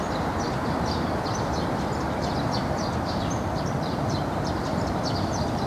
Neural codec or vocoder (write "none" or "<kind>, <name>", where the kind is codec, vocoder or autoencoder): vocoder, BigVGAN v2